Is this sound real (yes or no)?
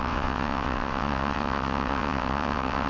no